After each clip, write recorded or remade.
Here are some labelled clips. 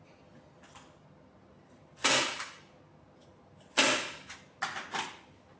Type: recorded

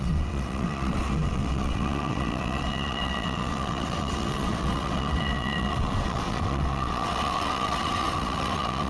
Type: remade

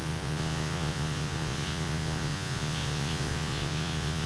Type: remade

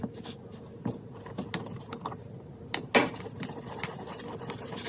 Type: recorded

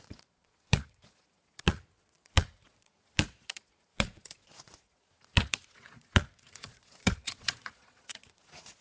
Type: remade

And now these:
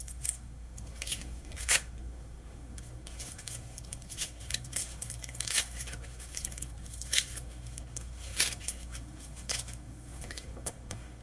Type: remade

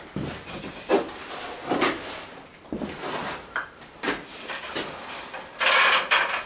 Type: recorded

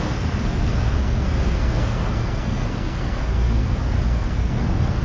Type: remade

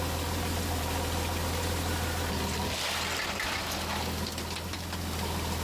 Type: recorded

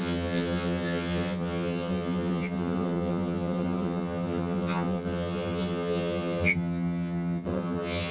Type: remade